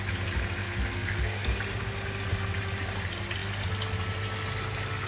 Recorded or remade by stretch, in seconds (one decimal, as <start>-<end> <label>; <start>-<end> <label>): 0.0-0.6 recorded; 0.6-1.6 remade; 1.6-5.1 recorded